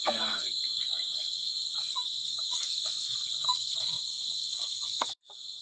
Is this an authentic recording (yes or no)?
no